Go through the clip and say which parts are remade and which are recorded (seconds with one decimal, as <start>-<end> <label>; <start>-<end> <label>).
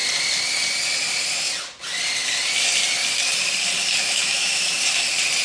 0.0-4.0 recorded; 4.0-4.7 remade; 4.7-5.4 recorded